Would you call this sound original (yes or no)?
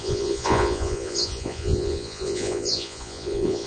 no